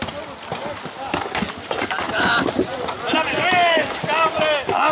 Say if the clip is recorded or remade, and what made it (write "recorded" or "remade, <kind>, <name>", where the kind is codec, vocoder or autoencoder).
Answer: recorded